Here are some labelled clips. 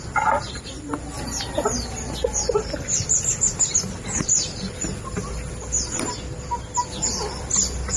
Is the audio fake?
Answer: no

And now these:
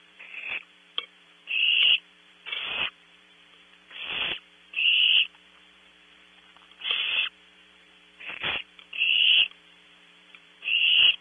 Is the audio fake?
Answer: yes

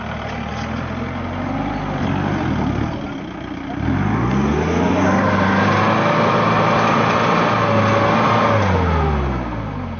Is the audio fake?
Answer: no